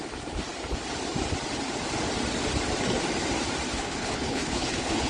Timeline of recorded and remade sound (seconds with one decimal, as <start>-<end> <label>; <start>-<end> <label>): 0.0-3.7 recorded; 3.7-5.1 remade